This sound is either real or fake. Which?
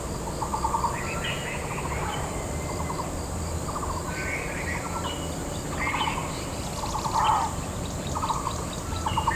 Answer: real